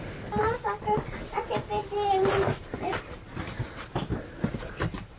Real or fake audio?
real